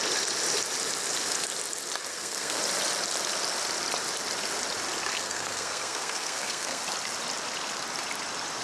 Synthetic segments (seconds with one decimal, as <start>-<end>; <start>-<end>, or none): 2.1-2.6; 5.1-6.8